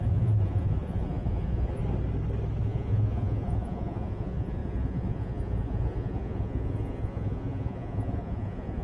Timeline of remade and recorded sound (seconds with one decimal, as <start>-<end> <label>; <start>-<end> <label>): 0.0-1.8 remade; 1.8-2.6 recorded; 2.6-8.8 remade